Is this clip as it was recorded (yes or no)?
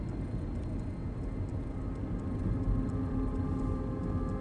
yes